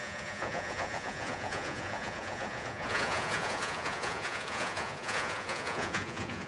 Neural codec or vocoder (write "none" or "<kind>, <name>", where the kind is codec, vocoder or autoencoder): vocoder, Vocos